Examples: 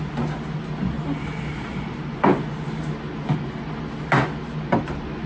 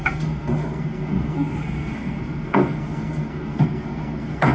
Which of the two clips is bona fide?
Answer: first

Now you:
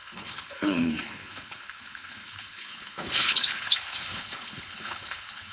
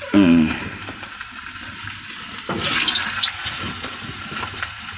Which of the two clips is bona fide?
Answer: second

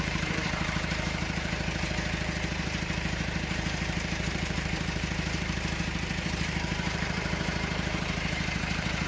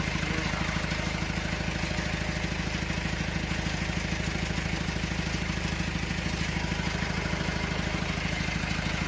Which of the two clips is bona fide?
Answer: second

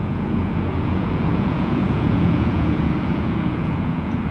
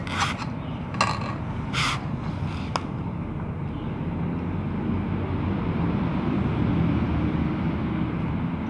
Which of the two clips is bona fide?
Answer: second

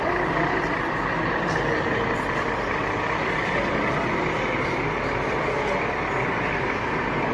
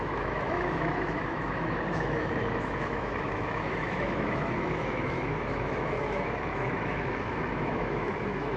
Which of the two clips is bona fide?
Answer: first